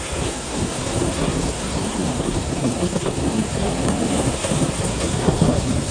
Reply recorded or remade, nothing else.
remade